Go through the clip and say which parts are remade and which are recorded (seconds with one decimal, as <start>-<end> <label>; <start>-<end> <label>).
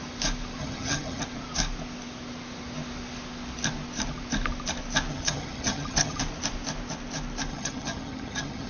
0.0-0.6 recorded; 0.6-1.2 remade; 1.2-5.1 recorded; 5.1-6.2 remade; 6.2-7.5 recorded; 7.5-8.7 remade